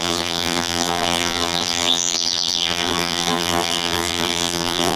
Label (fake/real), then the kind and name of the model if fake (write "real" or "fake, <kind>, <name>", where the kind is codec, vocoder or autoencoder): fake, vocoder, BigVGAN v2